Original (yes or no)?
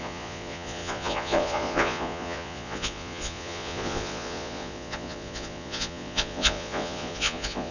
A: no